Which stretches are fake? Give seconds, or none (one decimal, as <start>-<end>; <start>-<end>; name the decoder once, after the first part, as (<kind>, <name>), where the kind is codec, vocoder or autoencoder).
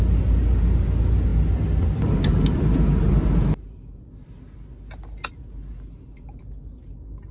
none